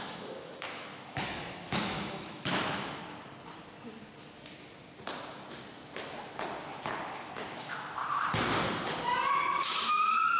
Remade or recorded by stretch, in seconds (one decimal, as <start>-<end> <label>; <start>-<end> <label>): 0.0-3.0 remade; 3.0-7.1 recorded; 7.1-8.0 remade; 8.0-9.3 recorded; 9.3-10.4 remade